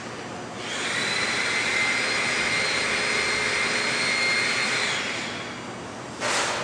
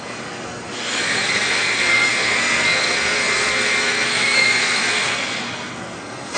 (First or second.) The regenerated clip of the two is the second